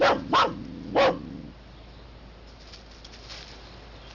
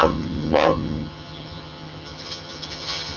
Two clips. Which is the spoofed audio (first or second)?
second